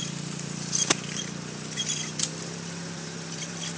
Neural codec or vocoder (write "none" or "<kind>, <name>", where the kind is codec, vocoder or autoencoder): vocoder, BigVGAN v2